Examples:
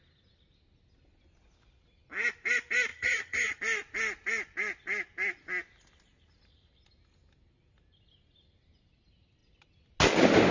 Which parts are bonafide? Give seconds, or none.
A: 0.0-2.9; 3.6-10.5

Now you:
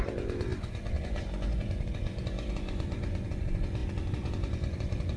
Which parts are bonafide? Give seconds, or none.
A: none

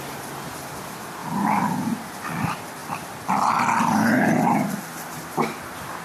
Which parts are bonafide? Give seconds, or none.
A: 1.2-2.4; 2.8-5.1

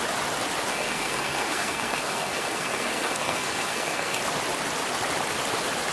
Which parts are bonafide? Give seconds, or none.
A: 0.0-0.7; 4.2-5.9

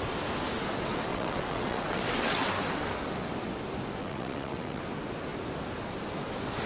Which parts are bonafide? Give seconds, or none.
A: 0.0-1.1; 2.5-4.0; 4.8-6.7

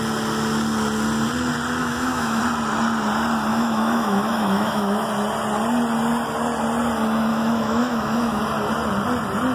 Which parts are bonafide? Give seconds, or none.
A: 0.0-1.8; 2.4-3.5; 5.1-7.3; 8.4-9.5

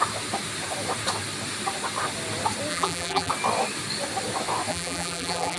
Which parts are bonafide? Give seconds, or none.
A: 0.0-2.7; 3.3-4.7

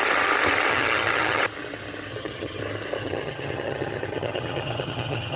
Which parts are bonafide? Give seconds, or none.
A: 0.0-0.7; 1.4-2.1; 2.6-3.0